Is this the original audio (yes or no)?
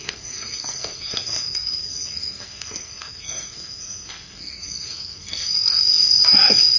no